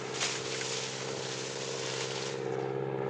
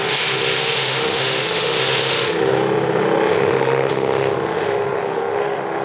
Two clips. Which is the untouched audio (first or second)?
first